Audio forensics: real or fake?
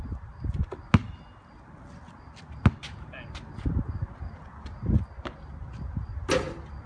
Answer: real